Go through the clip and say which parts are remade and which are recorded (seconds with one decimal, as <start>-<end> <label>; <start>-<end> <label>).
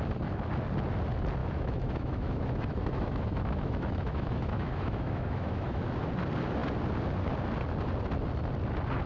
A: 0.0-1.4 recorded; 1.4-5.8 remade; 5.8-9.1 recorded